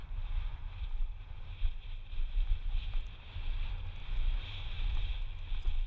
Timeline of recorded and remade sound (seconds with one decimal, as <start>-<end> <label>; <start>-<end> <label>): 0.0-3.3 remade; 3.3-4.0 recorded; 4.0-5.1 remade; 5.1-5.9 recorded